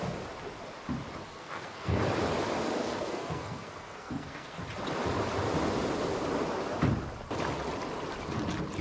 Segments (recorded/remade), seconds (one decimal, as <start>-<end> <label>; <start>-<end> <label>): 0.0-1.2 recorded; 1.2-2.0 remade; 2.0-2.8 recorded; 2.8-4.6 remade; 4.6-8.8 recorded